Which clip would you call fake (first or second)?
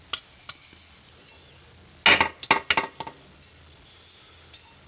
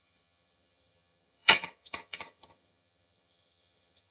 second